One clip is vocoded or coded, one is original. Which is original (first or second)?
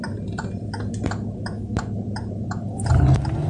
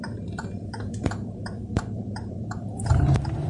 first